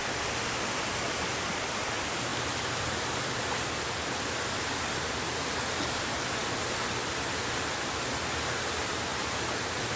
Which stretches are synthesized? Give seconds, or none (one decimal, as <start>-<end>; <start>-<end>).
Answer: none